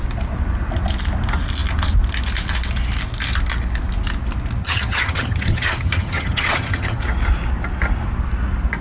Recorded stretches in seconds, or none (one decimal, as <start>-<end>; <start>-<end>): 0.0-4.6; 7.0-8.8